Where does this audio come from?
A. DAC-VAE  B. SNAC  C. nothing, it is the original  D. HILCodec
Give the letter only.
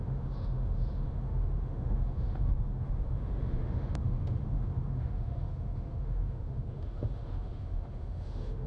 A